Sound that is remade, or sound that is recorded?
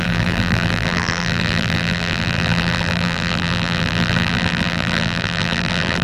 remade